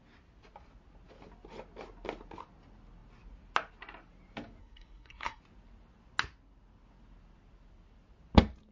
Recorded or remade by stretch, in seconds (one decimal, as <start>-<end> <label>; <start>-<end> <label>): 0.0-4.6 recorded; 4.6-5.4 remade; 5.4-8.7 recorded